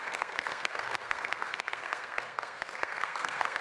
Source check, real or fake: fake